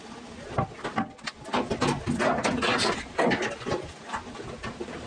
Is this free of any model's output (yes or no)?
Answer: yes